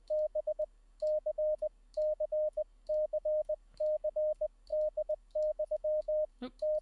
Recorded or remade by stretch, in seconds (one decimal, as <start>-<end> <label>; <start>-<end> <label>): 0.0-6.8 remade